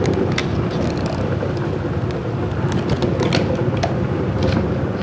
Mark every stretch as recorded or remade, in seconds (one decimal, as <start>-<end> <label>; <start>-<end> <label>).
0.0-5.0 recorded